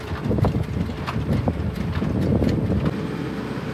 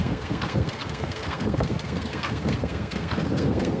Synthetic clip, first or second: second